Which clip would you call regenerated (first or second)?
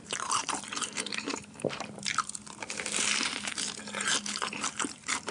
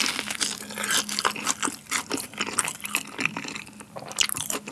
first